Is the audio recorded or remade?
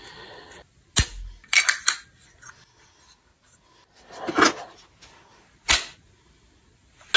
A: recorded